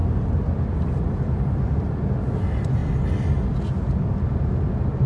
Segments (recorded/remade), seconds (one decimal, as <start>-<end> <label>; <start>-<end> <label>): 0.0-5.1 recorded

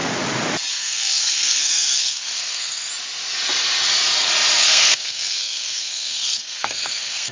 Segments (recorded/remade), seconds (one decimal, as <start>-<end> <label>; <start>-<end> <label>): 0.0-0.7 recorded; 0.7-2.9 remade; 2.9-4.6 recorded; 4.6-7.3 remade

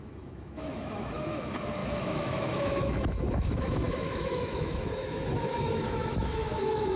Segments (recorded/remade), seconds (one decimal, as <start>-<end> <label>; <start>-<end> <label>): 0.0-7.0 remade

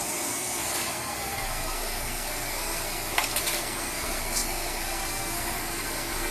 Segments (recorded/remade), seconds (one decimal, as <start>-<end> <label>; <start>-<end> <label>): 0.0-6.3 remade

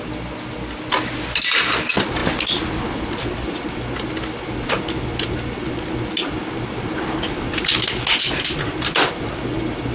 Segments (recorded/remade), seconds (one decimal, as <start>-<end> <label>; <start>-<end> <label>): 0.0-9.9 recorded